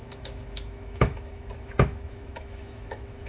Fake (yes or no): yes